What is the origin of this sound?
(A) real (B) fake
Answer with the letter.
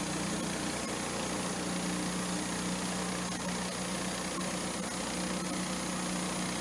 A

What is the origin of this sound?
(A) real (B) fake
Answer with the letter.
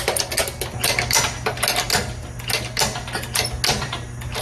A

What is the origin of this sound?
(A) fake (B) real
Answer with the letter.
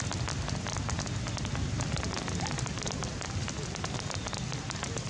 B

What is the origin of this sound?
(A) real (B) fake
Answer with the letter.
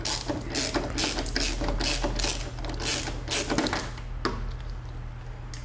A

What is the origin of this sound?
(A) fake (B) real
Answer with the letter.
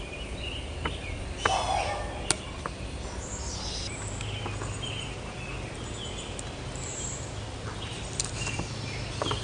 B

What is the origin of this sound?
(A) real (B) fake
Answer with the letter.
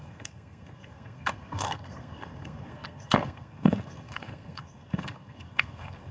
B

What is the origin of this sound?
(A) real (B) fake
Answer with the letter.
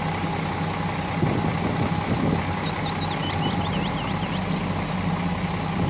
A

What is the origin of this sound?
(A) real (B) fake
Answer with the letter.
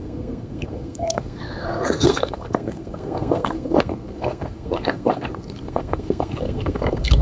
B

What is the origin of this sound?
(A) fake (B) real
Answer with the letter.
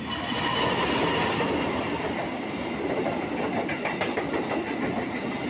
B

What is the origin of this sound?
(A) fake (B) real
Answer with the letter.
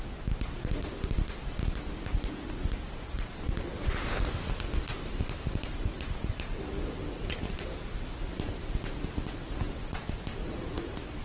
B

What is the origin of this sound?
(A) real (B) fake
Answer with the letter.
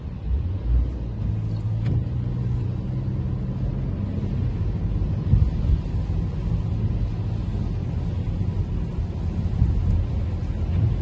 A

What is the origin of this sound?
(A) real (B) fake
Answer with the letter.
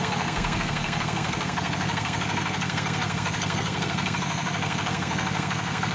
B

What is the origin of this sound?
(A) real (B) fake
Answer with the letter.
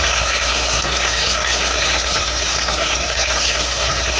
B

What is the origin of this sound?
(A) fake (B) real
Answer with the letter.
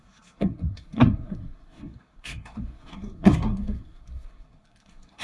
A